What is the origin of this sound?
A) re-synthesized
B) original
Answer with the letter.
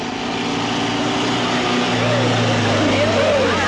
B